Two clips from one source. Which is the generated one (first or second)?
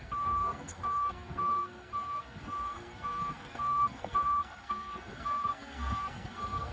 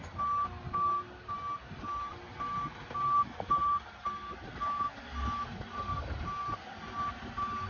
first